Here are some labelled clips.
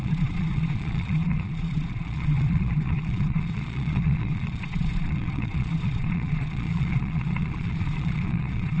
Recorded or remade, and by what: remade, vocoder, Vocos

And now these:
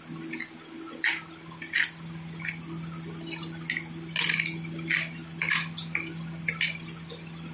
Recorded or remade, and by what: recorded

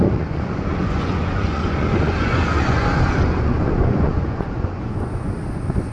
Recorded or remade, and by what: remade, vocoder, Vocos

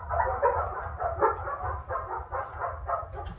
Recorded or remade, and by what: recorded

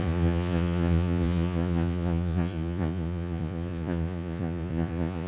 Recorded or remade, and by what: remade, vocoder, Vocos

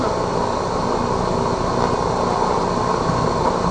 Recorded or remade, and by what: recorded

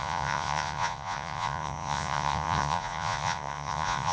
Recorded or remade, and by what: remade, vocoder, Vocos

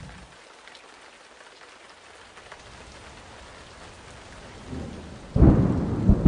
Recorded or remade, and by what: recorded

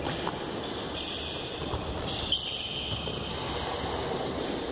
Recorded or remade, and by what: recorded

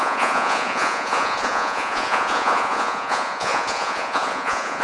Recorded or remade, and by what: remade, vocoder, Vocos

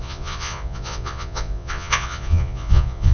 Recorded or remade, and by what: remade, vocoder, Vocos